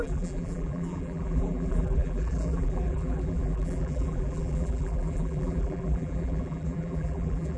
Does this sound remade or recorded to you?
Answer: remade